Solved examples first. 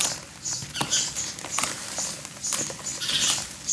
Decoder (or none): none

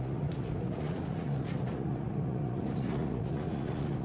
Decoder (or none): vocoder, Vocos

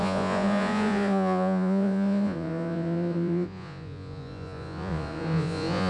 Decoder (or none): vocoder, Vocos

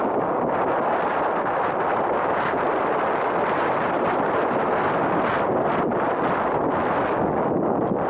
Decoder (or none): none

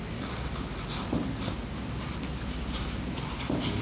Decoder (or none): none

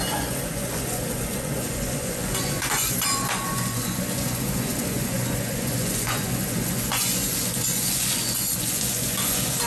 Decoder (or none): vocoder, Vocos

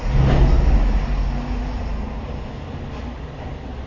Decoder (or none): none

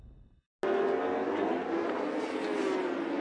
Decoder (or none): none